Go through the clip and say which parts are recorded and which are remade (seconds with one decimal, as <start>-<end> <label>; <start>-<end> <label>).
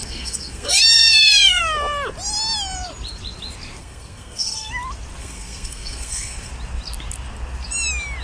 0.0-1.6 remade; 1.6-3.8 recorded; 3.8-4.7 remade; 4.7-5.2 recorded; 5.2-6.5 remade; 6.5-8.2 recorded